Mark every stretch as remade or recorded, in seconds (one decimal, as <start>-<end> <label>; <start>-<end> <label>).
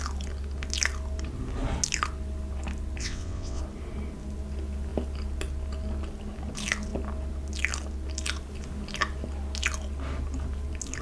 0.0-3.0 recorded; 3.0-3.6 remade; 3.6-11.0 recorded